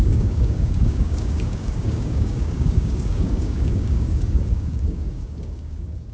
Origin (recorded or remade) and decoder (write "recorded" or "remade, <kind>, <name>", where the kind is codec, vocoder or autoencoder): remade, codec, DAC